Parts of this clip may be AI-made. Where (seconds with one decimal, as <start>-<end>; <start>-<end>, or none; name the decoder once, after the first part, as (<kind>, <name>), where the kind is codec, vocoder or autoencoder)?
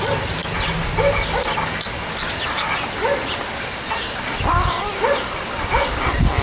none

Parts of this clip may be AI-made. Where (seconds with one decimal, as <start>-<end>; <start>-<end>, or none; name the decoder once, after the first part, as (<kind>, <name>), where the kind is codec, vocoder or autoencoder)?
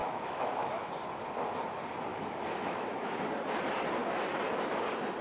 0.0-0.9 (autoencoder, DAC-VAE); 2.1-3.1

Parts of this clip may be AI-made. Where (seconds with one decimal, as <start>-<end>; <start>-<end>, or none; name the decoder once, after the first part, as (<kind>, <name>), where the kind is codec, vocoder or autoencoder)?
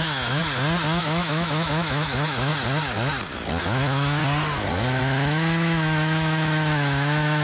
0.0-0.4 (autoencoder, DAC-VAE); 1.0-2.5; 3.6-4.2; 5.0-7.4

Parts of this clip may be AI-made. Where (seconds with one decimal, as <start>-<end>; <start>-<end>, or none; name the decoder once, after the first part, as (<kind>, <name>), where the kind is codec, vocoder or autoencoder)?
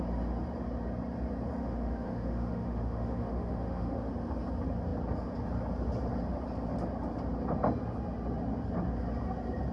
1.6-4.1 (autoencoder, DAC-VAE)